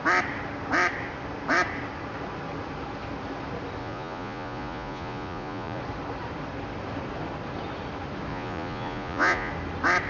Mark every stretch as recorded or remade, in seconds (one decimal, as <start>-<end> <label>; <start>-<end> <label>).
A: 0.0-3.8 recorded; 3.8-5.8 remade; 5.8-8.3 recorded; 8.3-9.5 remade; 9.5-10.1 recorded